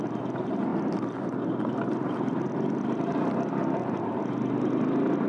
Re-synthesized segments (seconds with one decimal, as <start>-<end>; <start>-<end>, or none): none